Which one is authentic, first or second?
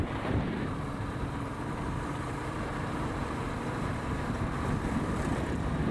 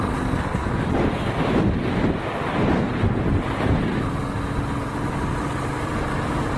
second